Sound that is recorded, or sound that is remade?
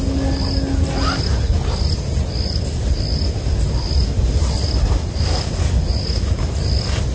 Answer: recorded